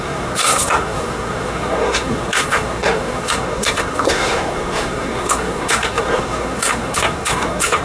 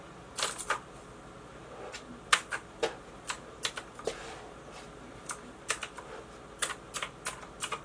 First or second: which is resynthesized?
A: first